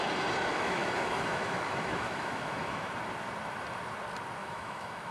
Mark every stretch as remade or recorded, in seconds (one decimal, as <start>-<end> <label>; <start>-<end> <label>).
0.0-0.5 recorded; 0.5-2.9 remade; 2.9-4.4 recorded; 4.4-5.1 remade